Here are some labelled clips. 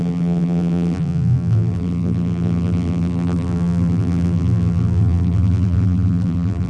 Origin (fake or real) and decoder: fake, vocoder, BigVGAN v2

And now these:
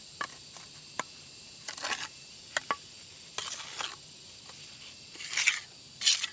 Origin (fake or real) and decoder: real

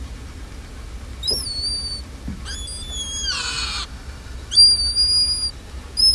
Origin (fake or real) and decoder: real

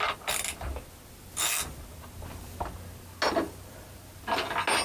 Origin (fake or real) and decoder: real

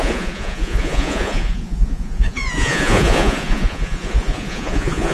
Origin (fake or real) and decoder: fake, vocoder, Vocos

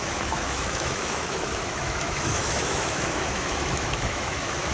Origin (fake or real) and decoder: fake, autoencoder, DAC-VAE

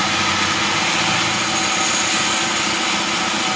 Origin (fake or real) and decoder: real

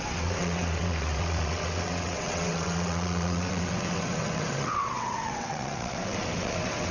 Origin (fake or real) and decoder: fake, vocoder, WaveNeXt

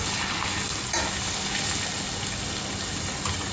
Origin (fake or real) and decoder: real